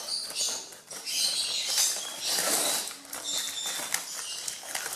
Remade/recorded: recorded